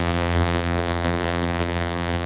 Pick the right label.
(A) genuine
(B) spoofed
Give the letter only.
B